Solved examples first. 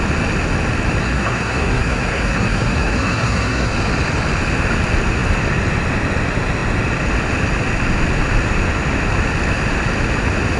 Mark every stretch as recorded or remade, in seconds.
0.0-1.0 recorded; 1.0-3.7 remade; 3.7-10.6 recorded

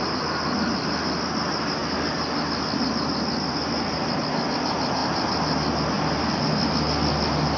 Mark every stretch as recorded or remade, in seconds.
0.0-7.6 recorded

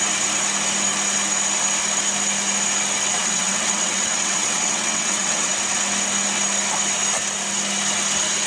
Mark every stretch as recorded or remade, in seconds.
0.0-3.1 recorded; 3.1-5.5 remade; 5.5-8.5 recorded

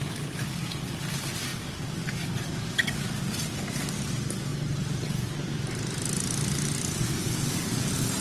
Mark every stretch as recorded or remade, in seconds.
0.0-1.5 recorded; 1.5-3.3 remade; 3.3-8.2 recorded

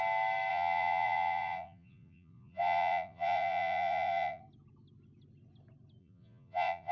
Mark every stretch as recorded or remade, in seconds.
0.0-0.5 recorded; 0.5-4.4 remade; 4.4-6.0 recorded; 6.0-6.9 remade

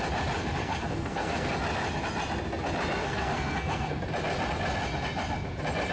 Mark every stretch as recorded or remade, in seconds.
0.0-0.6 recorded; 0.6-1.5 remade; 1.5-3.0 recorded; 3.0-4.0 remade; 4.0-5.9 recorded

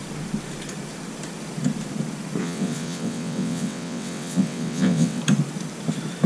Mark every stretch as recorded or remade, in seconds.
0.0-2.4 recorded; 2.4-5.2 remade; 5.2-6.3 recorded

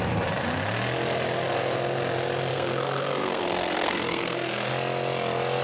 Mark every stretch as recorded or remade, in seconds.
0.0-2.5 recorded; 2.5-4.7 remade; 4.7-5.6 recorded